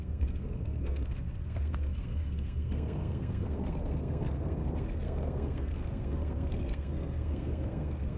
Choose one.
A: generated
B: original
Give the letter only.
A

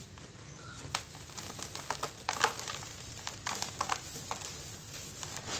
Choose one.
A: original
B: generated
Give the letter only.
A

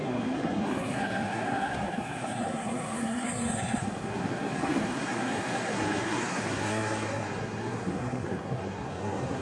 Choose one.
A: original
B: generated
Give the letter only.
B